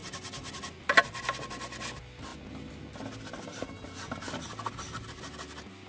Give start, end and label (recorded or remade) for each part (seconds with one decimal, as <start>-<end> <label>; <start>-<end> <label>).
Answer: 0.0-5.9 recorded